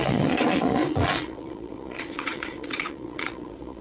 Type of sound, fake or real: fake